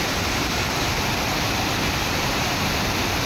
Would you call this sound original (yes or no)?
yes